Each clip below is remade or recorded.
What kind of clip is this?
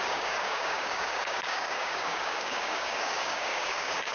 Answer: remade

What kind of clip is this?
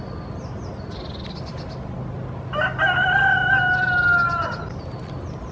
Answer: recorded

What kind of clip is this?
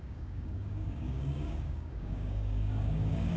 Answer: remade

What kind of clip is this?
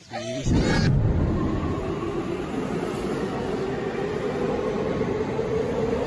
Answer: recorded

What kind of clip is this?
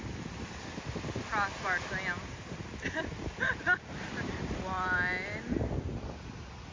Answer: recorded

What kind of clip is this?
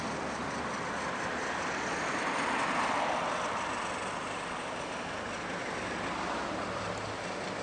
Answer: recorded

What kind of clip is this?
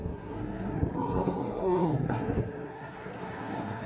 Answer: remade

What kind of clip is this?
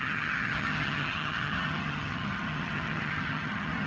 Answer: remade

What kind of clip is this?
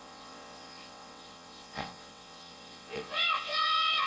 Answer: remade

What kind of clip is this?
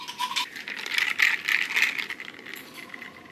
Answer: recorded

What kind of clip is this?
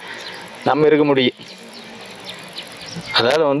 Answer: recorded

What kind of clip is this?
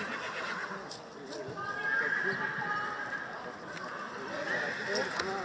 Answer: recorded